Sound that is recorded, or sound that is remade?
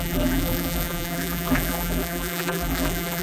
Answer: remade